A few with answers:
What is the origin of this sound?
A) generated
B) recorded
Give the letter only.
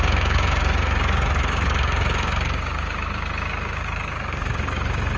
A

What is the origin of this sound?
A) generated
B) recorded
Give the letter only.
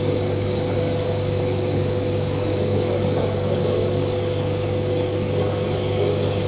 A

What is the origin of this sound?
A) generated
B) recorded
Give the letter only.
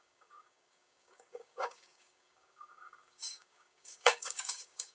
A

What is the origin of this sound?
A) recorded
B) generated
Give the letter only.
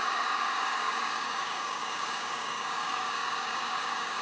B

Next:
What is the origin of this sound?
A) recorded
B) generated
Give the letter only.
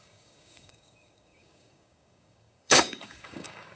B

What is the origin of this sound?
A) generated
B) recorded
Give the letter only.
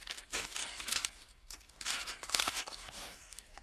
A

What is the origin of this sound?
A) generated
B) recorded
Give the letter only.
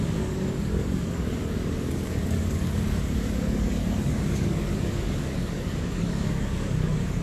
A